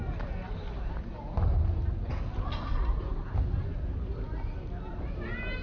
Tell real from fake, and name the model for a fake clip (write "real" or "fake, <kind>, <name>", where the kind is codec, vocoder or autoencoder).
real